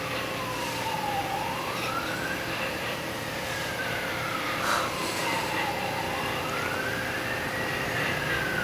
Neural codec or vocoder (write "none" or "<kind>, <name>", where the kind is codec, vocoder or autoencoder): vocoder, BigVGAN v2